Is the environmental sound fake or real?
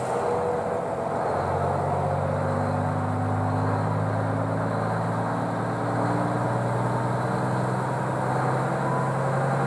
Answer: real